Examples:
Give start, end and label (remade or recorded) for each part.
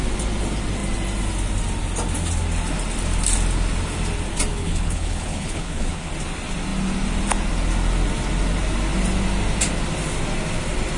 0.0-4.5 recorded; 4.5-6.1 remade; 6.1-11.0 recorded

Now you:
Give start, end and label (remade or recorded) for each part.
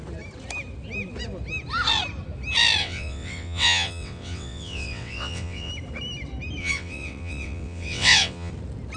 0.0-2.8 recorded; 2.8-5.7 remade; 5.7-6.6 recorded; 6.6-8.5 remade; 8.5-9.0 recorded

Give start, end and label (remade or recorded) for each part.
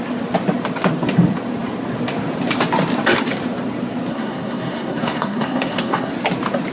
0.0-4.1 recorded; 4.1-6.1 remade; 6.1-6.7 recorded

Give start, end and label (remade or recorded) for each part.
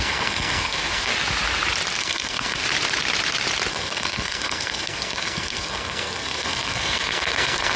0.0-1.1 remade; 1.1-2.0 recorded; 2.0-2.6 remade; 2.6-3.7 recorded; 3.7-7.8 remade